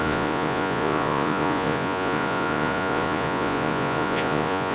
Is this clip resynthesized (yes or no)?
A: yes